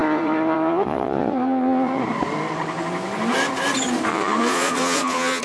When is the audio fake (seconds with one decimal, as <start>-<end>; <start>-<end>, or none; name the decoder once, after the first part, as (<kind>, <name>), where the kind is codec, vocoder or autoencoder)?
0.0-2.0 (vocoder, Vocos); 4.1-5.4